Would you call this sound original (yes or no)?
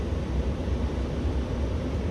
yes